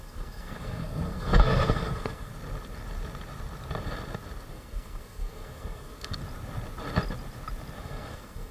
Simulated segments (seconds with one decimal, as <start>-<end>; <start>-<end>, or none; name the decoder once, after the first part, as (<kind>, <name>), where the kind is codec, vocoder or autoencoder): 0.0-2.3 (codec, SNAC); 4.5-6.2; 7.8-8.5